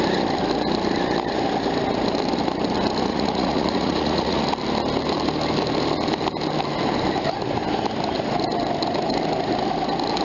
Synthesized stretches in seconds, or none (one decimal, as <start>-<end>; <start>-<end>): 3.1-4.4